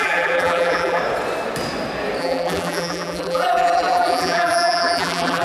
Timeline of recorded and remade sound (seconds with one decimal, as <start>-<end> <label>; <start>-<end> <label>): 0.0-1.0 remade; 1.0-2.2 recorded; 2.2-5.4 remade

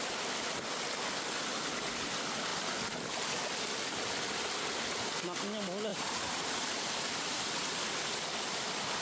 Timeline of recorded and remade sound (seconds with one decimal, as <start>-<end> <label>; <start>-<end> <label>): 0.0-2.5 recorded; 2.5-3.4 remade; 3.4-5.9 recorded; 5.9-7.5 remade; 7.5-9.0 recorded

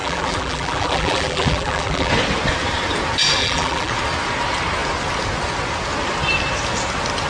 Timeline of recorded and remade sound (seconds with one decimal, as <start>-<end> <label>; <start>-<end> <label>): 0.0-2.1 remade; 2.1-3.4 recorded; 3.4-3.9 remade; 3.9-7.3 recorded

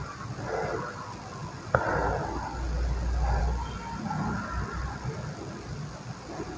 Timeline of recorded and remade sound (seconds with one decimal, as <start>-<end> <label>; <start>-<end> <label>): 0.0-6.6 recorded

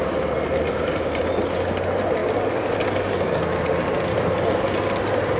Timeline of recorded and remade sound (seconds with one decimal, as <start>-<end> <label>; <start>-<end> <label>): 0.0-1.2 remade; 1.2-5.4 recorded